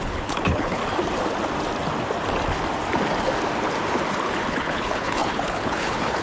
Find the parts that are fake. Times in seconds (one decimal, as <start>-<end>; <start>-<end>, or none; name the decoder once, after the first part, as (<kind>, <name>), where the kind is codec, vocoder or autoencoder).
0.0-0.8 (codec, HILCodec); 4.5-6.2